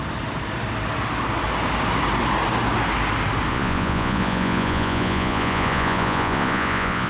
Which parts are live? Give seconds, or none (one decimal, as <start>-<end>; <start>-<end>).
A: 0.0-3.5